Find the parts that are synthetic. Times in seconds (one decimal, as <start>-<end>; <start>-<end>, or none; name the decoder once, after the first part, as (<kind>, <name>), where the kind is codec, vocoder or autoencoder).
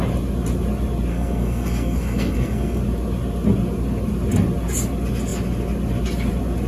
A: 1.1-2.8 (codec, SNAC)